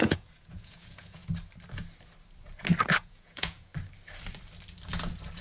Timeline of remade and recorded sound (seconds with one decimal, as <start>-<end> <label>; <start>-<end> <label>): 0.0-1.2 remade; 1.2-2.9 recorded; 2.9-3.7 remade; 3.7-5.4 recorded